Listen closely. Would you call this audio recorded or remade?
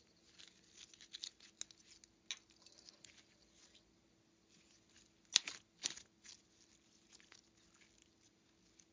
recorded